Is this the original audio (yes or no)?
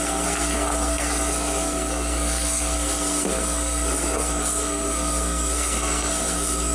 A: no